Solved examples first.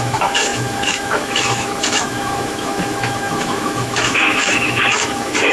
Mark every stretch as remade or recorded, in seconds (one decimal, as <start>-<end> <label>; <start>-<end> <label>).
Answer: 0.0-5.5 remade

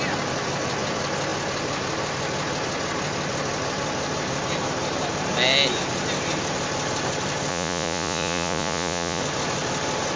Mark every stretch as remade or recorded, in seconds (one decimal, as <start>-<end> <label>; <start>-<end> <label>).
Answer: 0.0-7.5 recorded; 7.5-9.2 remade; 9.2-10.2 recorded

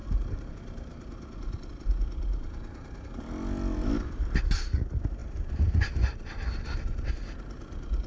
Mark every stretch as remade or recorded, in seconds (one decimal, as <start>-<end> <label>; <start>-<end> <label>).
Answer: 0.0-8.1 recorded